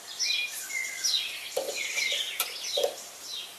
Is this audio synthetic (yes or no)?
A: no